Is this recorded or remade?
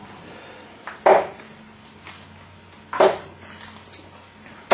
recorded